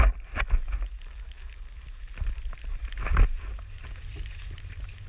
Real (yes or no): yes